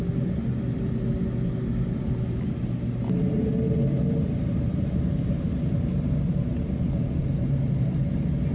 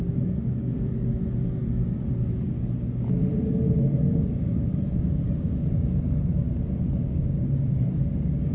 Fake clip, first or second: second